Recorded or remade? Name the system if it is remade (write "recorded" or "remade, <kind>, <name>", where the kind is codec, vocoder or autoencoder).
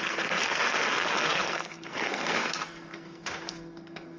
remade, codec, SNAC